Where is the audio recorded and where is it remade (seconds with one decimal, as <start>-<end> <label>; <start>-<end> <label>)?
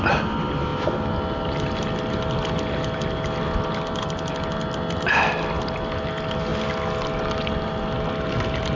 0.0-8.8 recorded